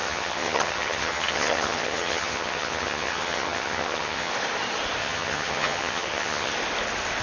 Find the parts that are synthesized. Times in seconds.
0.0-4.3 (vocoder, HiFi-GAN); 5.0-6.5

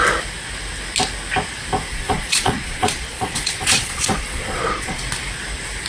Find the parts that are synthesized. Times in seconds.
1.9-5.0 (vocoder, Vocos)

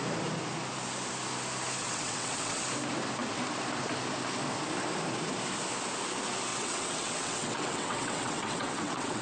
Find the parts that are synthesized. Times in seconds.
1.8-2.6 (vocoder, WaveNeXt); 6.5-9.2

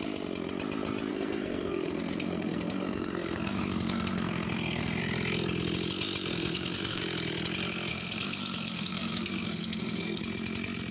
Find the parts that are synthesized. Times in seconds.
1.1-5.0 (codec, SNAC); 6.3-7.0; 7.9-10.2

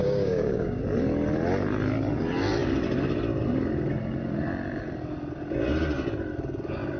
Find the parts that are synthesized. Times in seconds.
0.0-0.8 (codec, DAC)

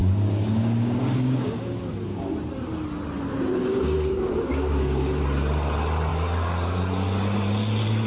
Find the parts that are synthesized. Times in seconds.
0.0-2.3 (codec, DAC); 3.6-5.2; 6.1-6.8

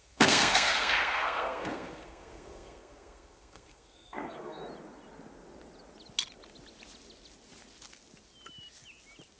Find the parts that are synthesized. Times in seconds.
0.0-4.6 (codec, SNAC)